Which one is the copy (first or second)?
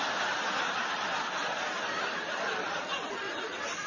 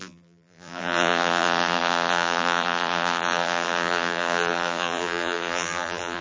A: second